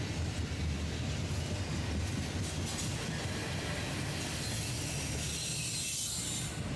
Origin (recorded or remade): recorded